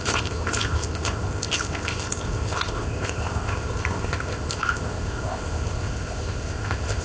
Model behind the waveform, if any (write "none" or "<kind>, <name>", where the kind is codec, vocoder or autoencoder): codec, ZipCodec